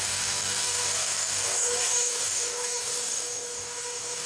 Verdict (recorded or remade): remade